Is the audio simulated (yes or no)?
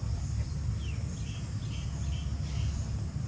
no